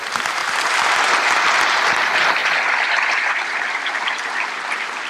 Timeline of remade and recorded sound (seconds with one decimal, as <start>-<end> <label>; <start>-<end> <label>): 0.0-5.1 recorded